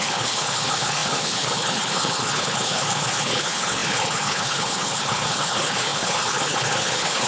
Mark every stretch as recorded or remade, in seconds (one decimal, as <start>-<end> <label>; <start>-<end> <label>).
0.0-7.3 remade